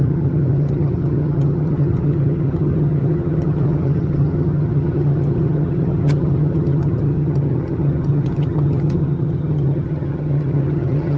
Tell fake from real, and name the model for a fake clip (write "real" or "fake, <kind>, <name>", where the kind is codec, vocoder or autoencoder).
fake, vocoder, HiFi-GAN